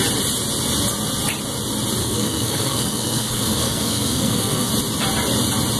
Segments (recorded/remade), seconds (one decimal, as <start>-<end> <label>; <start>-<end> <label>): 0.0-2.0 recorded; 2.0-4.7 remade; 4.7-5.8 recorded